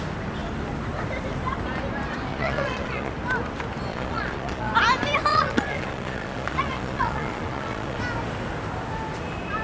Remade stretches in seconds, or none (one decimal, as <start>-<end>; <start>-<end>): 2.3-3.1; 3.9-4.7; 5.3-8.0